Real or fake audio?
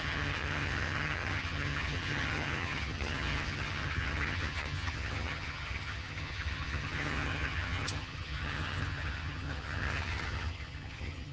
fake